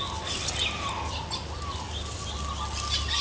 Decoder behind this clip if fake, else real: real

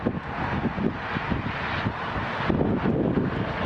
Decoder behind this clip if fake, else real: real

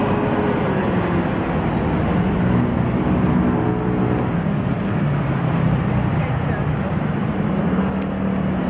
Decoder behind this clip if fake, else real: real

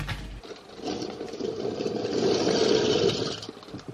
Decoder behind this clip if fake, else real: fake, vocoder, BigVGAN v2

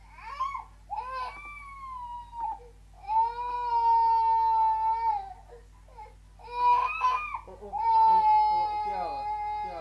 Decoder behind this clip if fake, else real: real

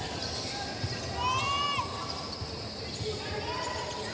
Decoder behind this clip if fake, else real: real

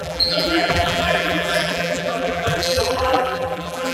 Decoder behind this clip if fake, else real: fake, vocoder, BigVGAN v2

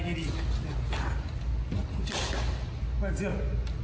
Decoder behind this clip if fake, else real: real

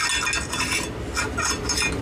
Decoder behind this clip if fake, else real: real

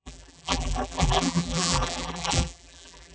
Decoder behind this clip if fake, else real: fake, vocoder, BigVGAN v2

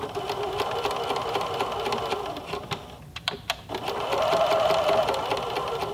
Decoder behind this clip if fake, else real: fake, vocoder, BigVGAN v2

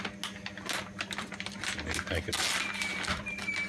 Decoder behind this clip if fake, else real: real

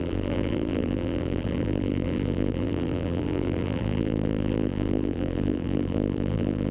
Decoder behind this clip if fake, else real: fake, vocoder, BigVGAN v2